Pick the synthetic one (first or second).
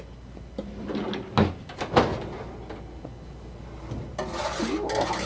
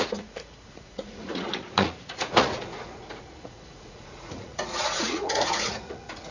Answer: second